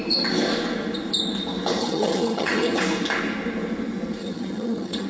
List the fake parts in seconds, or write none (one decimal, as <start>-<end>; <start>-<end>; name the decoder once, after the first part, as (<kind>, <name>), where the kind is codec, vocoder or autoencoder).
1.8-2.8 (vocoder, HiFi-GAN); 4.2-5.1